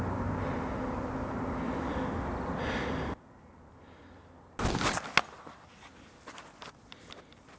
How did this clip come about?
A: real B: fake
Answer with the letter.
A